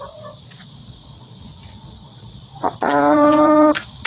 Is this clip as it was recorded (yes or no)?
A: no